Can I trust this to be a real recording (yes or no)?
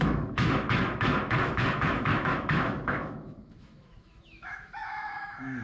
no